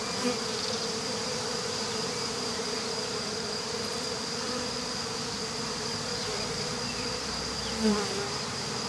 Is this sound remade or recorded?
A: remade